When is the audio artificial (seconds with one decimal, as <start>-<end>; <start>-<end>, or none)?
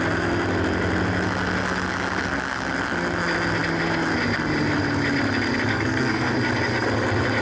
5.7-6.3